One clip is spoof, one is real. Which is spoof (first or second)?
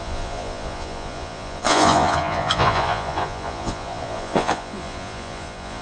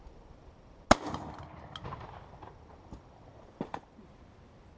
first